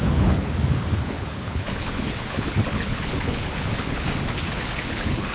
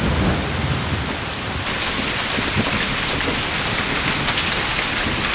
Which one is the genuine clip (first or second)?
second